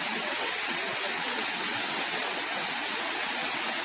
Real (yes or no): no